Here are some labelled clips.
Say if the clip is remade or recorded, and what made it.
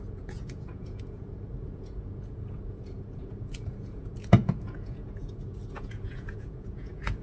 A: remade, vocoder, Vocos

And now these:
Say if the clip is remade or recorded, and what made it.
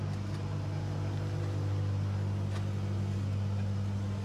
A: recorded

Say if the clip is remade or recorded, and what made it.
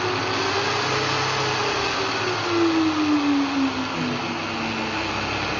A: recorded